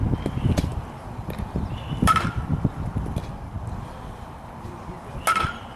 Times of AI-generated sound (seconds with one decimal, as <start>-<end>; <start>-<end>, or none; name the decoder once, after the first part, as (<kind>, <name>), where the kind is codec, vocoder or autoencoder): 0.7-2.5 (vocoder, BigVGAN v2)